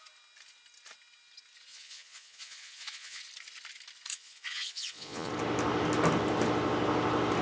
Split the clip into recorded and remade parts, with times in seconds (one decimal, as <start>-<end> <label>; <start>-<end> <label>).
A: 0.0-1.7 recorded; 1.7-3.2 remade; 3.2-4.1 recorded; 4.1-5.3 remade; 5.3-7.4 recorded